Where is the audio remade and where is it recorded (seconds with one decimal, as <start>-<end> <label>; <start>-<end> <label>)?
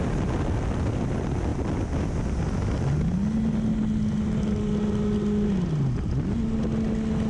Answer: 0.0-7.3 recorded